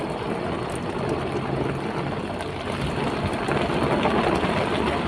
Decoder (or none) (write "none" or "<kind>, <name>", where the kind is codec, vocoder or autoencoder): none